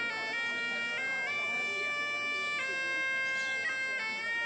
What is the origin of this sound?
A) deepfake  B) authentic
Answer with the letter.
B